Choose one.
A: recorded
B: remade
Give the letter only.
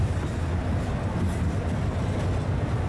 A